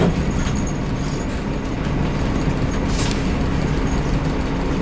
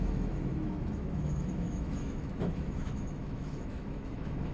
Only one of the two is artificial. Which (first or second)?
second